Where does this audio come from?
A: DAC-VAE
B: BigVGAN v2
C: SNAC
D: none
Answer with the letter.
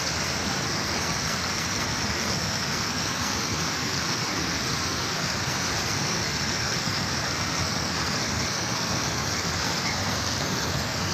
C